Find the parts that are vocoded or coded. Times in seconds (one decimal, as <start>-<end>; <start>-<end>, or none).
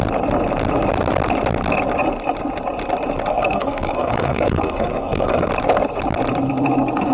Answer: 3.3-5.5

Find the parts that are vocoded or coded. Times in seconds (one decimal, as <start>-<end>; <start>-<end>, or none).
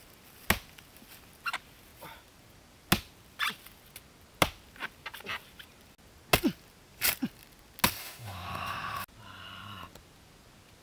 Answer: 8.0-9.0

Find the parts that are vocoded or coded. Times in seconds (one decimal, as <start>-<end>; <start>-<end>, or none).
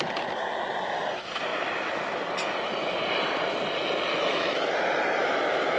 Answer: 1.5-2.2; 4.1-4.6; 5.2-5.8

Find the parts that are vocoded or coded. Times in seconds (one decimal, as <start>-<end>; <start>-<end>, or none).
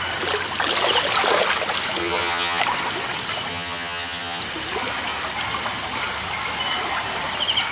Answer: 2.0-2.6; 3.5-4.4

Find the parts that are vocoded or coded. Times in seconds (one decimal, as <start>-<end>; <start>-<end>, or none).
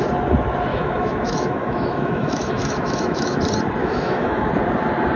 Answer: 0.7-3.4; 3.8-4.5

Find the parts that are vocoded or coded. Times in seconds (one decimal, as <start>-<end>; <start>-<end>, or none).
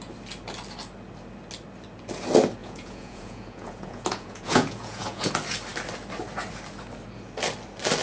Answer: 2.6-5.3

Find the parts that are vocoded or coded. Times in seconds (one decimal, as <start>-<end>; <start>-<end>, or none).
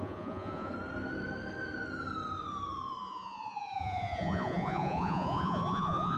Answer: 0.0-0.7; 3.0-6.2